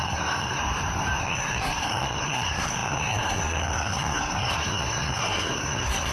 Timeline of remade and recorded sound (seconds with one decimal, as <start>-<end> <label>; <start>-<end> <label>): 0.0-0.6 remade; 0.6-1.2 recorded; 1.2-6.1 remade